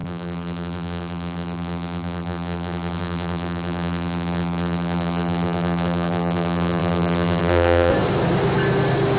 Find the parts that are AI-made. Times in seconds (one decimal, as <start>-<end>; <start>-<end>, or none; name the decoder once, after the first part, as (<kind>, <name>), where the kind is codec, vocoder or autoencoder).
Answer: 0.0-7.9 (vocoder, BigVGAN v2)